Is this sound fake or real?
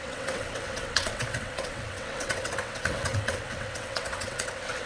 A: fake